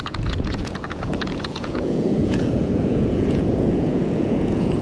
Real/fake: fake